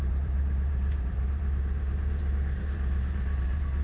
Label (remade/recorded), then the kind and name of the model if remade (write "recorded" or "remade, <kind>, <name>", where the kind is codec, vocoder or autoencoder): remade, vocoder, BigVGAN v2